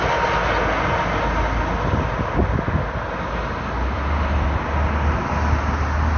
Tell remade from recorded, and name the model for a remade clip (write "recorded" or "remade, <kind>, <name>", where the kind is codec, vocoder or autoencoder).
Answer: recorded